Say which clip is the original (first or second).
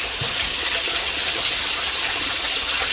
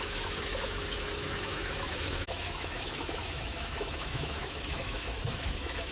first